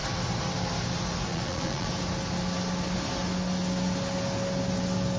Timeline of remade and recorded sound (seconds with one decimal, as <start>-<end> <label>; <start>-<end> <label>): 0.0-1.3 recorded; 1.3-1.9 remade; 1.9-5.2 recorded